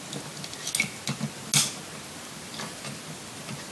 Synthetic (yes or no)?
no